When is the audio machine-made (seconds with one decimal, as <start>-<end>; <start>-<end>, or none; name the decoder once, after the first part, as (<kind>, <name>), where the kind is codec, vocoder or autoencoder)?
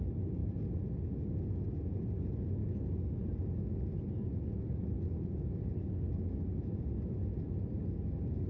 none